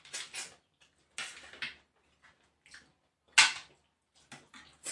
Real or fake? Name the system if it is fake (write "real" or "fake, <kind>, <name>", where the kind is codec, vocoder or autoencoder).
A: real